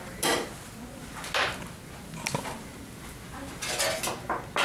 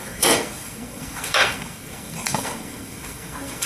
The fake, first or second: second